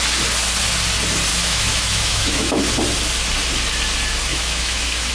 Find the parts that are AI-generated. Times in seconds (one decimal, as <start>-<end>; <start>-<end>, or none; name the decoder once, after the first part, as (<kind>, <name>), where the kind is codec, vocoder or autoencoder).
1.3-2.6 (autoencoder, DAC-VAE); 4.3-5.1